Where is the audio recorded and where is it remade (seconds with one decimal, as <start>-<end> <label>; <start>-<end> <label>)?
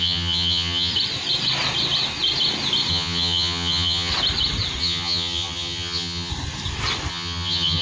0.0-0.9 remade; 0.9-2.9 recorded; 2.9-4.1 remade; 4.1-4.8 recorded; 4.8-6.3 remade; 6.3-7.1 recorded; 7.1-7.8 remade